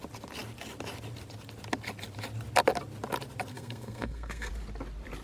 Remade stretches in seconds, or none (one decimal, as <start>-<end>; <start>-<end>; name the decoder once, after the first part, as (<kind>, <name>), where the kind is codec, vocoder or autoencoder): 3.5-4.5 (codec, SNAC)